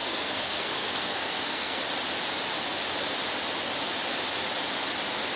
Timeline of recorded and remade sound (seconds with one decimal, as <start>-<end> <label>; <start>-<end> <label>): 0.0-1.8 remade; 1.8-5.4 recorded